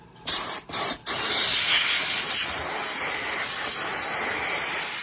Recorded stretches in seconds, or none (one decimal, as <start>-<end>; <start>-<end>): 1.0-3.4; 3.9-5.0